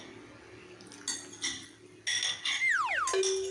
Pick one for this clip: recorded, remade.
recorded